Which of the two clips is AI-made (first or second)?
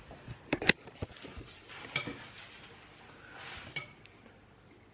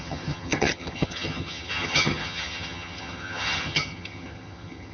second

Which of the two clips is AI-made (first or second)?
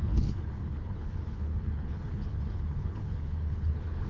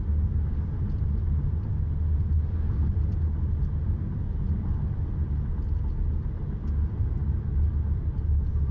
first